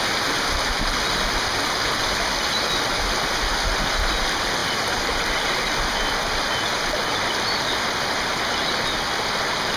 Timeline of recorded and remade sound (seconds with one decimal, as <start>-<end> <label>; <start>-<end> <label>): 0.0-9.8 recorded